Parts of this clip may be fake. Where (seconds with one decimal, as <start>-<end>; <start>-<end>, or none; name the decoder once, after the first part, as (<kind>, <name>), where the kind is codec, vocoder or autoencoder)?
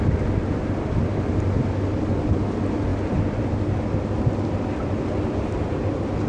0.4-1.2 (vocoder, BigVGAN v2)